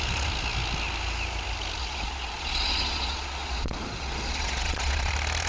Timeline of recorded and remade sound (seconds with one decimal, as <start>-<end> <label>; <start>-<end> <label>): 0.0-1.8 recorded; 1.8-5.1 remade; 5.1-5.5 recorded